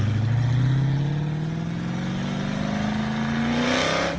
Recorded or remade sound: recorded